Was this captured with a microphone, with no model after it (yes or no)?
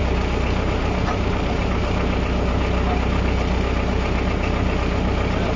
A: yes